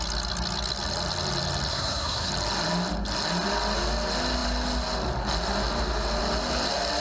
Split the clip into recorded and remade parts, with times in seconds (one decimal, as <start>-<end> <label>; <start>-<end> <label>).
0.0-1.7 recorded; 1.7-2.3 remade; 2.3-7.0 recorded